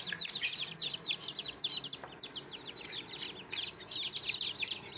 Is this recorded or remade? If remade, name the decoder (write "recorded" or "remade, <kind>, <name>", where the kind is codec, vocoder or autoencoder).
recorded